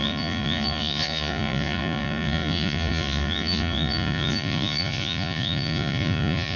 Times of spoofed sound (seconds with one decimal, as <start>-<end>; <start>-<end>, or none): 0.0-6.6